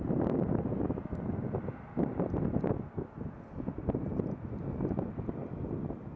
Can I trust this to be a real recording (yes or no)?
yes